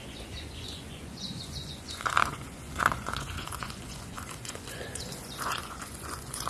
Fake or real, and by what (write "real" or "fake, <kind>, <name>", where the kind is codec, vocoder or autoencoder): fake, vocoder, Vocos